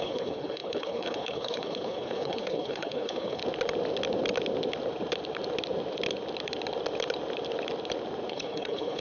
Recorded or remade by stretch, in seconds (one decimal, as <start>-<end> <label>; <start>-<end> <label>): 0.0-3.4 remade; 3.4-8.3 recorded; 8.3-9.0 remade